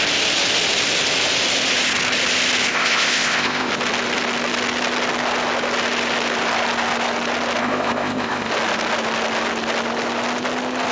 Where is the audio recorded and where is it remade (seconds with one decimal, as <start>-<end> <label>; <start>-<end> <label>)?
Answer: 0.0-2.7 recorded; 2.7-3.7 remade; 3.7-7.6 recorded; 7.6-8.5 remade; 8.5-10.9 recorded